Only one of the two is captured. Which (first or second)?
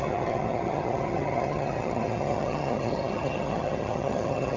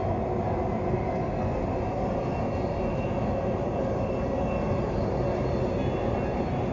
second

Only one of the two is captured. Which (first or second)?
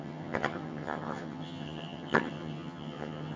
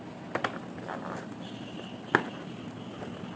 second